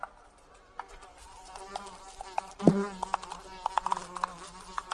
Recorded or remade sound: recorded